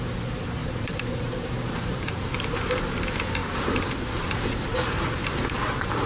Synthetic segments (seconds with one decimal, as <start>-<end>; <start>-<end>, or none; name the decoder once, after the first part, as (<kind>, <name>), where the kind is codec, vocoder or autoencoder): 0.6-2.8 (vocoder, BigVGAN v2); 3.4-5.5